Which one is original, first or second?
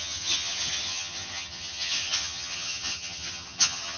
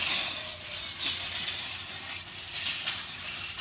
second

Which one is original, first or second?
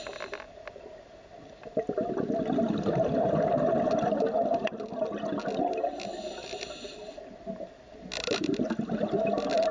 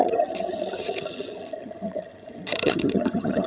first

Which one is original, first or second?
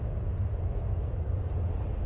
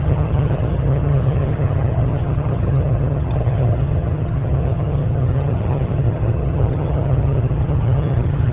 first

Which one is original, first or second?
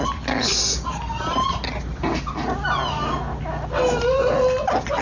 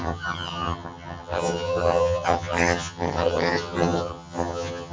first